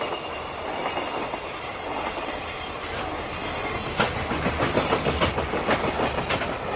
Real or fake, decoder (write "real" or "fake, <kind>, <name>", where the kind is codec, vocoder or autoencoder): real